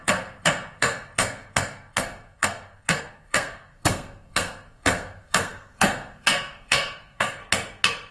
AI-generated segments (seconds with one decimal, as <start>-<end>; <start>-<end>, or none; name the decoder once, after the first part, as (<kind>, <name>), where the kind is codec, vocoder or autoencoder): 0.0-7.4 (codec, SNAC)